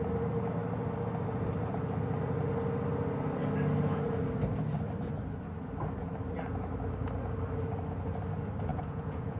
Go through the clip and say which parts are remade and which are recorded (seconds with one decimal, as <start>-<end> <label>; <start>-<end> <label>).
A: 0.0-8.7 recorded; 8.7-9.4 remade